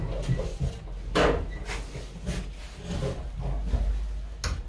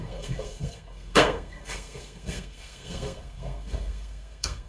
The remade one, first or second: second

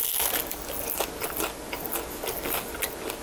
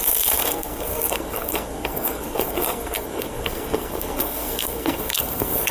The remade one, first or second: second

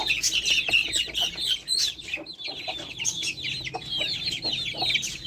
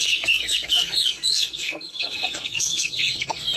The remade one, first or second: second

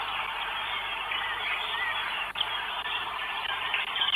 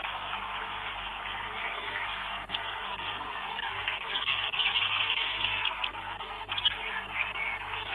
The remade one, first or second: second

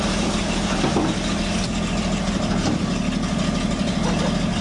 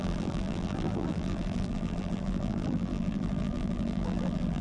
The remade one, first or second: second